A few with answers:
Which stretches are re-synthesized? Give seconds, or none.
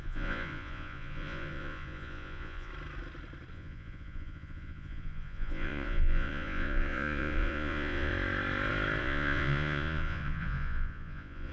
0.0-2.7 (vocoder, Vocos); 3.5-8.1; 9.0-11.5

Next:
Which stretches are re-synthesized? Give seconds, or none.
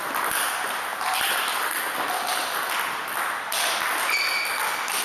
none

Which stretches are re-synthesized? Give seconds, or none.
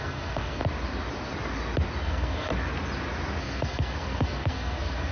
0.0-0.6 (codec, SNAC); 2.0-2.5; 3.4-5.1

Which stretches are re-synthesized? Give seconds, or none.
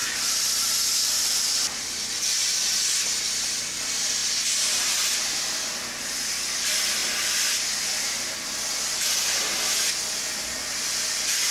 none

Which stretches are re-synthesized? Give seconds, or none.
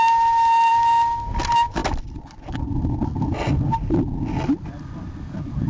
none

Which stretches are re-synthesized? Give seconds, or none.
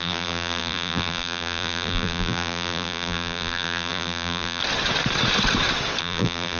0.0-4.6 (vocoder, BigVGAN v2); 6.0-6.6